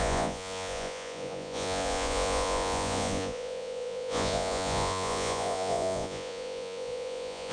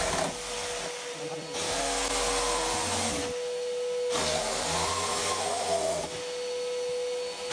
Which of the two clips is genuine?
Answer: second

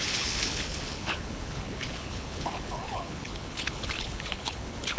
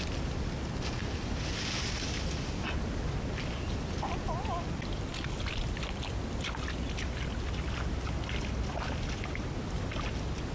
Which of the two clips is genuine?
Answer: second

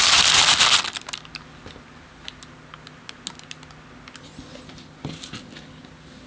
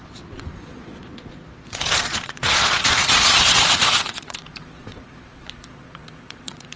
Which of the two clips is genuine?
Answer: first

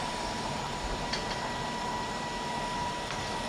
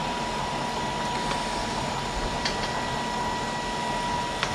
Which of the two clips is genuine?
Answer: second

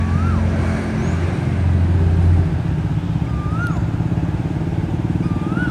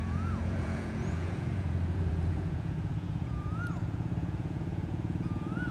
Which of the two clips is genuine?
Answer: first